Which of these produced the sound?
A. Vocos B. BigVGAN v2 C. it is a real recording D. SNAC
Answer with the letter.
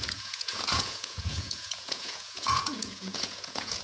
A